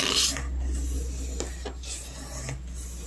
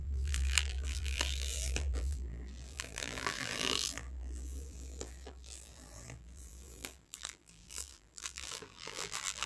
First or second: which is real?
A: first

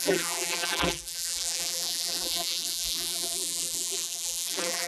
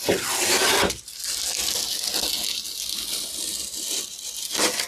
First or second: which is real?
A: second